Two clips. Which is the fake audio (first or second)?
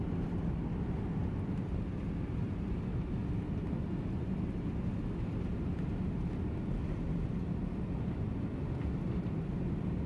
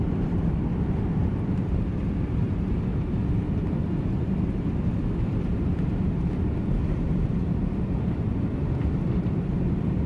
second